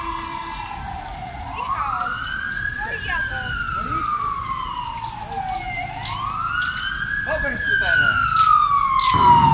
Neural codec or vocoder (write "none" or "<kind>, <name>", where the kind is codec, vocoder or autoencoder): none